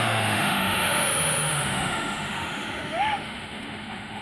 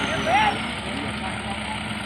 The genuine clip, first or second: second